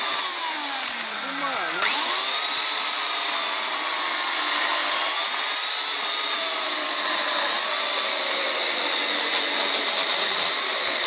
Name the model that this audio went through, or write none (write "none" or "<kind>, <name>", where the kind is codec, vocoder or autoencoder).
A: none